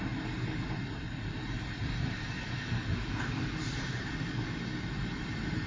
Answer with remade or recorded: recorded